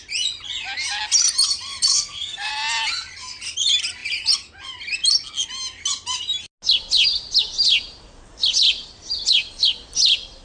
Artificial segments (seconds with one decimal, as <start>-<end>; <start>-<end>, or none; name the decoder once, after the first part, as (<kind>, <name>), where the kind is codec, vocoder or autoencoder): 1.9-2.5 (codec, SNAC)